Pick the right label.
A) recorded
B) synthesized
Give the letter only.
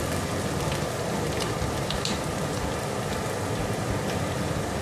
B